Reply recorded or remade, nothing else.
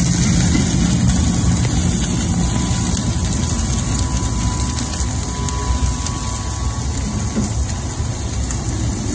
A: recorded